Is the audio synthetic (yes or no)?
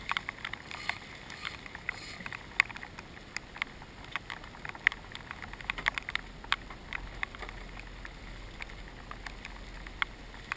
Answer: no